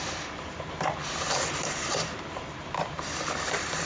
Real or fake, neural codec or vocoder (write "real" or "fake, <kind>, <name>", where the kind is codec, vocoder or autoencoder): fake, vocoder, BigVGAN v2